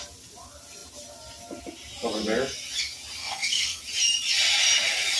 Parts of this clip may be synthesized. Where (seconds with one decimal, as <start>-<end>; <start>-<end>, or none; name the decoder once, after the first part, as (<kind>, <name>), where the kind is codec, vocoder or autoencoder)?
3.2-3.8 (codec, SNAC)